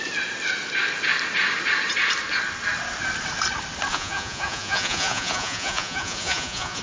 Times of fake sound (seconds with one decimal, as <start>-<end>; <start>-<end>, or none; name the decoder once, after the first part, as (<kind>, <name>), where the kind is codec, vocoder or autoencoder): 3.9-6.8 (vocoder, Vocos)